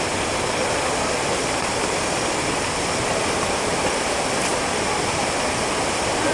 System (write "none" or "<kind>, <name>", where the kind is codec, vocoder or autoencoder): vocoder, BigVGAN v2